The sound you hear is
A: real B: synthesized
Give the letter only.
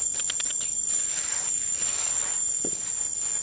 A